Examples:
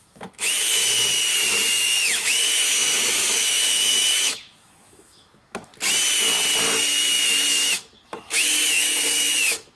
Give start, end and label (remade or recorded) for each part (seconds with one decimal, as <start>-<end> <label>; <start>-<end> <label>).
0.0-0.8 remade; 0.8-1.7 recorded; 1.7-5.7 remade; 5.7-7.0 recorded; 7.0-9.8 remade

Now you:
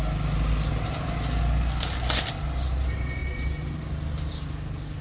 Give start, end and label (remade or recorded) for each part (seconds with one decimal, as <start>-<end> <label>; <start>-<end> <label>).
0.0-5.0 recorded

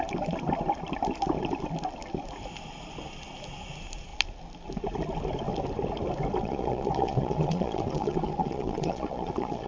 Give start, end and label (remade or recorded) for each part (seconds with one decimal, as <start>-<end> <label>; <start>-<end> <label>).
0.0-6.4 recorded; 6.4-9.7 remade

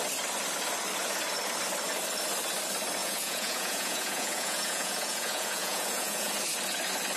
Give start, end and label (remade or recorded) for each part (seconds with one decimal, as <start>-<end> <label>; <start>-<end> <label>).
0.0-3.0 recorded; 3.0-6.3 remade; 6.3-7.2 recorded